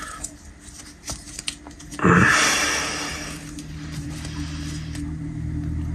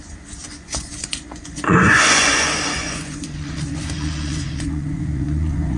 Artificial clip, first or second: second